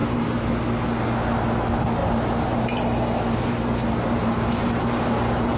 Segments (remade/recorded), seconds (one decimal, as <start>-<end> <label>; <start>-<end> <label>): 0.0-0.5 remade; 0.5-2.0 recorded; 2.0-5.6 remade